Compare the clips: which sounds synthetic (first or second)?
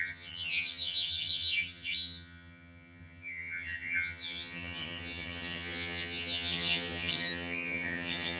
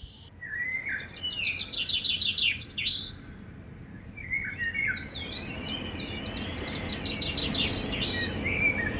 first